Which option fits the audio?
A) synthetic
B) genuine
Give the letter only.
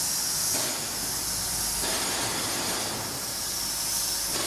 B